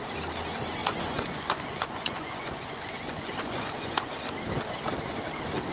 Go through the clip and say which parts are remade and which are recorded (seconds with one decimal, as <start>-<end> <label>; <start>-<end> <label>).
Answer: 0.0-0.8 recorded; 0.8-4.2 remade; 4.2-5.7 recorded